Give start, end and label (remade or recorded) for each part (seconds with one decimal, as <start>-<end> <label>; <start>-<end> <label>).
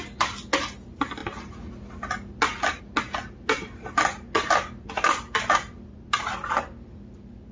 0.0-7.5 recorded